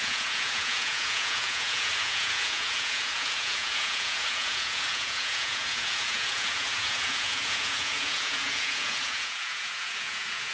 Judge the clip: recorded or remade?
remade